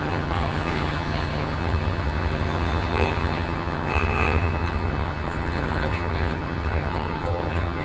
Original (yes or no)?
no